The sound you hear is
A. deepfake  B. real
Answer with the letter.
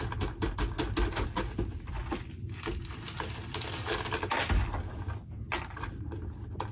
B